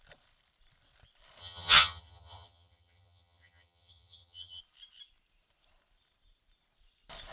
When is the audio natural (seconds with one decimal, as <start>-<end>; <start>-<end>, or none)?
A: 0.0-1.4; 4.6-7.3